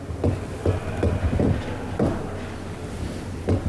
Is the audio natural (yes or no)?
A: yes